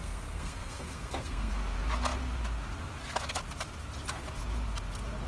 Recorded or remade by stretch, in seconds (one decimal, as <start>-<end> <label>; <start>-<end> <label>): 0.0-1.5 remade; 1.5-5.3 recorded